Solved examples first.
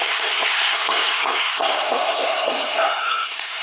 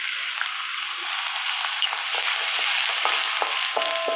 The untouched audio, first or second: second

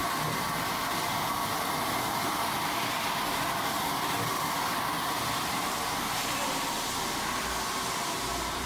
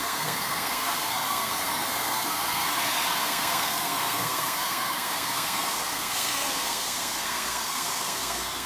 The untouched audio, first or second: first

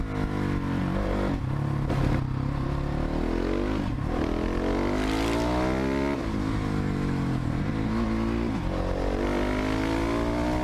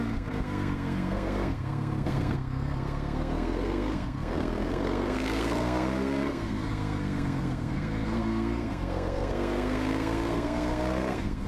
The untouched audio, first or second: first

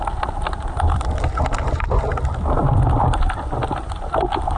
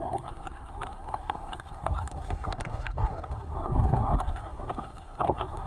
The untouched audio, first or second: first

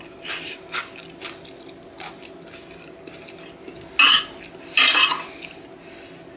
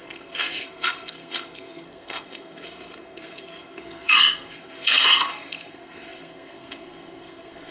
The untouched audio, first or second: first